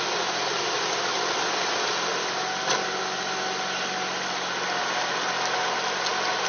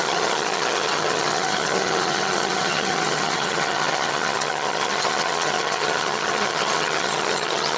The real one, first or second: first